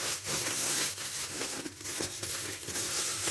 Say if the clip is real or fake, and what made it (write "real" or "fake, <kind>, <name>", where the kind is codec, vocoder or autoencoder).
fake, codec, SNAC